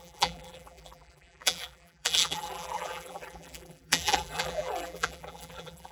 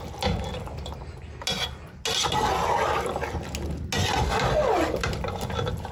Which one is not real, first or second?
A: first